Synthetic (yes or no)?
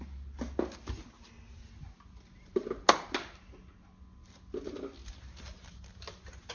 no